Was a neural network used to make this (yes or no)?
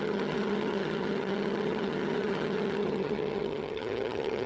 yes